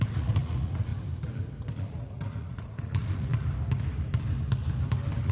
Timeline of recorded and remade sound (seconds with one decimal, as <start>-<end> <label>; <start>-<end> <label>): 0.0-0.9 remade; 0.9-1.7 recorded; 1.7-3.3 remade; 3.3-5.3 recorded